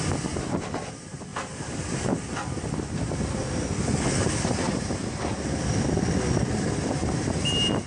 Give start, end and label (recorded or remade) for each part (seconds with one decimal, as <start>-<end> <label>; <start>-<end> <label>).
0.0-7.9 recorded